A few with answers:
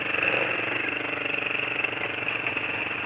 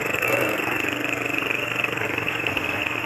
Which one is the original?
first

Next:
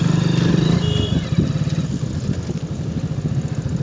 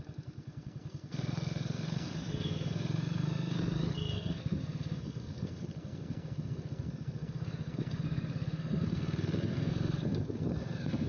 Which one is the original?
first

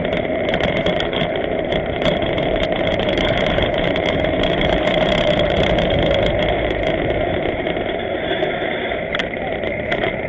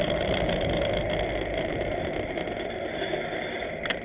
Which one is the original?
second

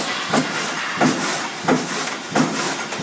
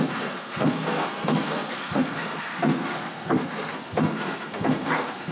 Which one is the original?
first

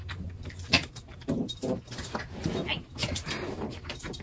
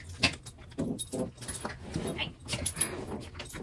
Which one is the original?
second